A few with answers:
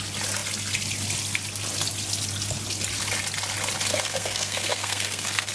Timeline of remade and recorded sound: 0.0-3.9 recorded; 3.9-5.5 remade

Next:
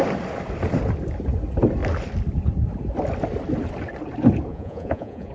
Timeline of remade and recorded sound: 0.0-4.5 recorded; 4.5-5.3 remade

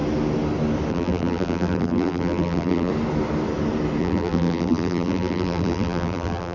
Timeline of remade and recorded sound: 0.0-0.9 recorded; 0.9-2.9 remade; 2.9-4.0 recorded; 4.0-6.5 remade

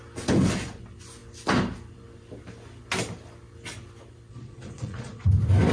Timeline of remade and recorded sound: 0.0-4.3 recorded; 4.3-5.3 remade; 5.3-5.7 recorded

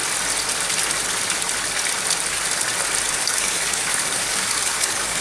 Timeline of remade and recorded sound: 0.0-3.1 recorded; 3.1-5.2 remade

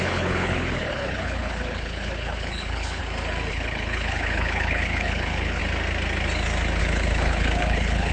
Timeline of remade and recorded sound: 0.0-3.0 remade; 3.0-3.5 recorded; 3.5-5.6 remade; 5.6-6.8 recorded; 6.8-8.1 remade